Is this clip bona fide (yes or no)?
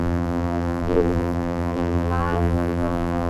no